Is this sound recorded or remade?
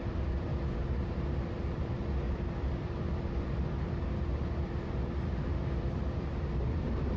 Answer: remade